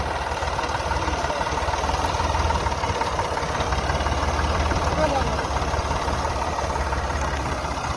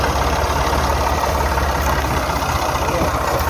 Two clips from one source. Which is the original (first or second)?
second